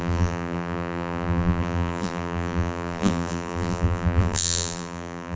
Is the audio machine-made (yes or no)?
yes